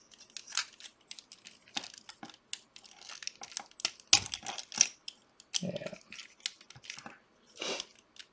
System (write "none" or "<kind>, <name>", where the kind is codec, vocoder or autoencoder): none